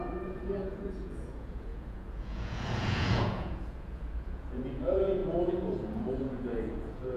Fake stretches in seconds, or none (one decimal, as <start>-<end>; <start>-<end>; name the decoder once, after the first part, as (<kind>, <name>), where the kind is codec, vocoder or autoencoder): 0.0-7.2 (vocoder, Vocos)